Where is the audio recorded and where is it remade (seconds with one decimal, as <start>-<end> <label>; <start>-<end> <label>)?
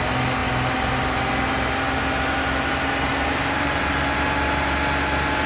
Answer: 0.0-3.1 recorded; 3.1-3.8 remade; 3.8-5.5 recorded